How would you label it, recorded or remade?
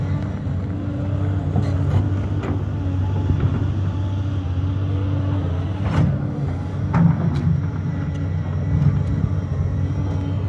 recorded